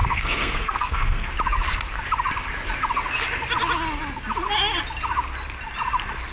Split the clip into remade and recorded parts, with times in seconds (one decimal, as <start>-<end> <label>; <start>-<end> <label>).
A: 0.0-1.3 remade; 1.3-6.3 recorded